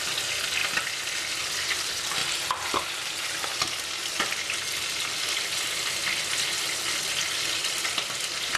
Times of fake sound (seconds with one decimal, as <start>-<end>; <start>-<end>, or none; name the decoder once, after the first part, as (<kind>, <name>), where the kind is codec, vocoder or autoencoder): none